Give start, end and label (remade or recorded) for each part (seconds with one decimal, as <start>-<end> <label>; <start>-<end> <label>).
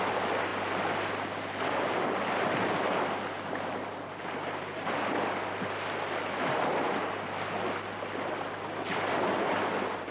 0.0-10.1 recorded